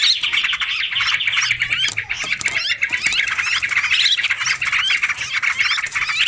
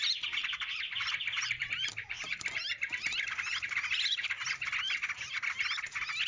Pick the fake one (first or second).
second